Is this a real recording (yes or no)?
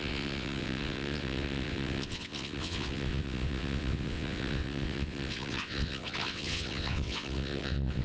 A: no